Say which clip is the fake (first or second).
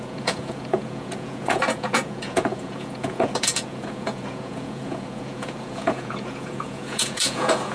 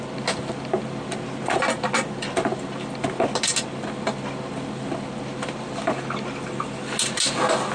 first